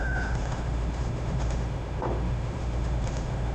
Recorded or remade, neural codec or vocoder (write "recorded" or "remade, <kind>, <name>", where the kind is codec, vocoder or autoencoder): remade, autoencoder, DAC-VAE